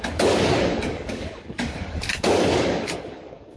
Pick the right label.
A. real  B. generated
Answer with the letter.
B